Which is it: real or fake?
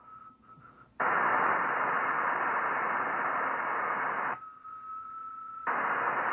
real